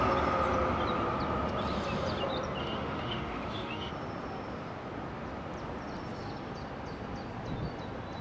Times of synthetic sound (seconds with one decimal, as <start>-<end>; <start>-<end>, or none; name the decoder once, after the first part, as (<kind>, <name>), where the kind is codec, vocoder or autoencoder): 2.6-3.9 (autoencoder, DAC-VAE)